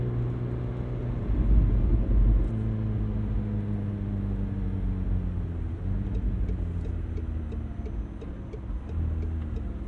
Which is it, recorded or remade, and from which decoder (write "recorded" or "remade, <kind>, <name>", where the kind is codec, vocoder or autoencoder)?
recorded